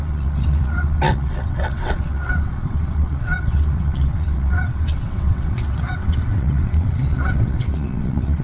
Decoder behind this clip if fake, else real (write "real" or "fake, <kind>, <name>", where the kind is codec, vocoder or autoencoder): fake, vocoder, WaveNeXt